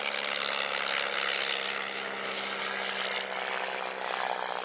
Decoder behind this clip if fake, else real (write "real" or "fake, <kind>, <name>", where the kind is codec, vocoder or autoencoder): real